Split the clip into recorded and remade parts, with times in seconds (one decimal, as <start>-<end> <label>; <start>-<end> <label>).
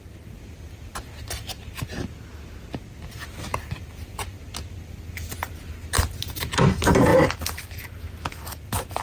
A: 0.0-9.0 recorded